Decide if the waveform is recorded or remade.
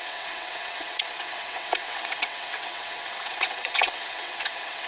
remade